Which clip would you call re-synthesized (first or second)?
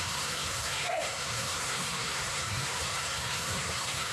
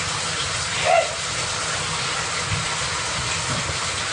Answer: first